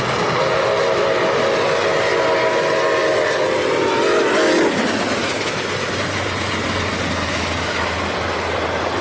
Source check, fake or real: real